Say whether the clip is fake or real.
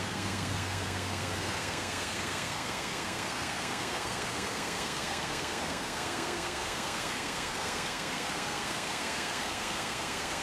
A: fake